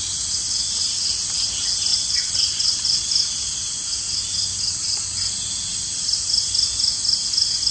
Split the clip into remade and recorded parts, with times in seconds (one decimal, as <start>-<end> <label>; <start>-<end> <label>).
0.0-1.9 recorded; 1.9-3.1 remade; 3.1-7.7 recorded